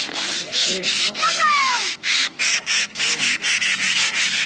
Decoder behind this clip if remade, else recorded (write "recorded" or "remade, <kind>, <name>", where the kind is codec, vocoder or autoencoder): remade, codec, SNAC